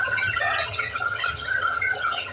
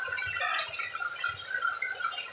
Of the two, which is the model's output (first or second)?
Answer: first